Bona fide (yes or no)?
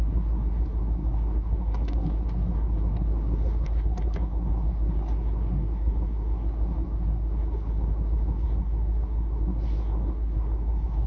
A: no